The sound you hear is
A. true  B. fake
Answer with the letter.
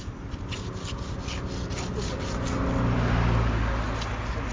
A